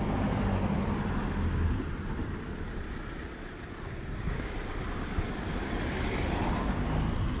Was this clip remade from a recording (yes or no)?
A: no